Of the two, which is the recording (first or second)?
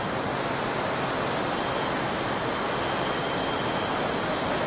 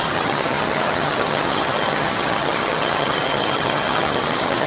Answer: first